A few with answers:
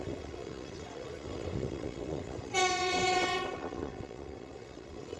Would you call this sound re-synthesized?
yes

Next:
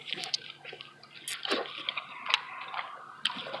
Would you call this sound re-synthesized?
no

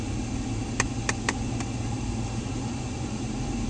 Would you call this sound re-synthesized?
no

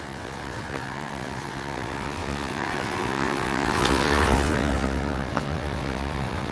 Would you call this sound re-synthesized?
yes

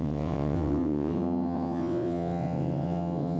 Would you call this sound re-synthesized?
yes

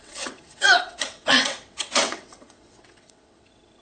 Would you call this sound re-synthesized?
yes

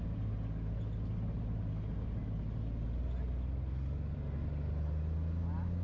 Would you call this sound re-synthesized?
no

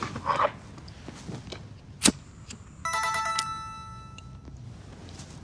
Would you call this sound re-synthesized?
no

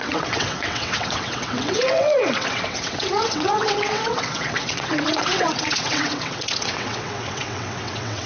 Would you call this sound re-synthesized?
yes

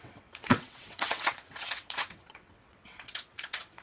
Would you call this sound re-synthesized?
yes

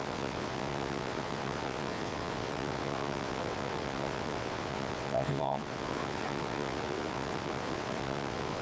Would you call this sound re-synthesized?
yes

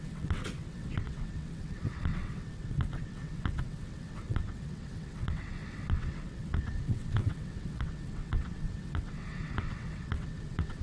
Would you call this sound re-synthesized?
yes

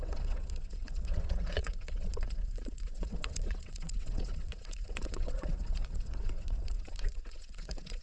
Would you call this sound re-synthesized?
yes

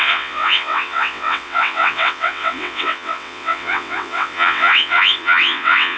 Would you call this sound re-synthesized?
yes